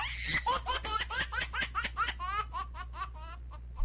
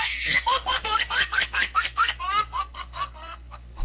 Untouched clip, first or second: first